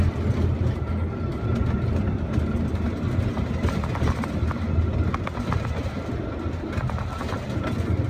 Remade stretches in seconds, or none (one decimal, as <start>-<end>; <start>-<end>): none